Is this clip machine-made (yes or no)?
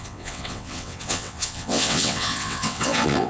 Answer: yes